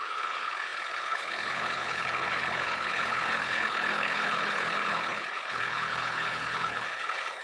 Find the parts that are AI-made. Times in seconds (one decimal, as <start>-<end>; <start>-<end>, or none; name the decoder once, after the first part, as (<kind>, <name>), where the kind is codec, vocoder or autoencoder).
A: 0.0-7.4 (codec, HILCodec)